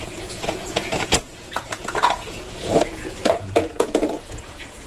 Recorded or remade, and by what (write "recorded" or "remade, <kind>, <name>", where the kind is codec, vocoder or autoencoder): remade, vocoder, Vocos